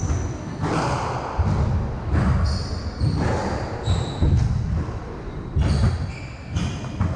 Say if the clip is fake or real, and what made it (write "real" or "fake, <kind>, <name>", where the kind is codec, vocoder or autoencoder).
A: real